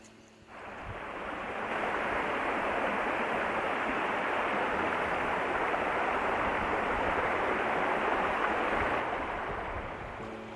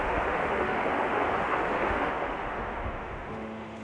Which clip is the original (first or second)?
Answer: first